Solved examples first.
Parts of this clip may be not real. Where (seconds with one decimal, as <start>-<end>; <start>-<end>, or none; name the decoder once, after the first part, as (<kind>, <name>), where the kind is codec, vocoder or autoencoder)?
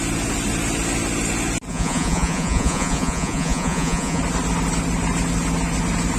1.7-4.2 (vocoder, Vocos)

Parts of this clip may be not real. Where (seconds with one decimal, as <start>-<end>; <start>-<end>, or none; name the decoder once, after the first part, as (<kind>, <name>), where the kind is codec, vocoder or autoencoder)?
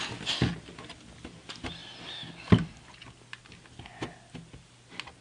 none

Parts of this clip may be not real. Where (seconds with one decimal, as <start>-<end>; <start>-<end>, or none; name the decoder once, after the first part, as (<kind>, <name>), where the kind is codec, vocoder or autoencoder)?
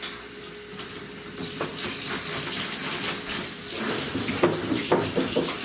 none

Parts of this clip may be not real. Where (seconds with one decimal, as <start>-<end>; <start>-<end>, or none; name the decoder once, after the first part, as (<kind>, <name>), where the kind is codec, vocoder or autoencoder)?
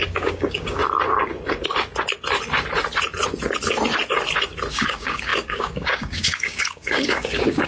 0.0-0.8 (codec, DAC); 4.7-7.7